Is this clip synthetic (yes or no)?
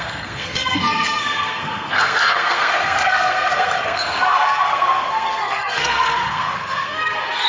yes